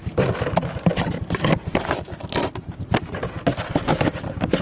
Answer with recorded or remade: recorded